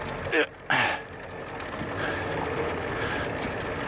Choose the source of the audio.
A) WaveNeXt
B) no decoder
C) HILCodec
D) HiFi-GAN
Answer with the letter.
B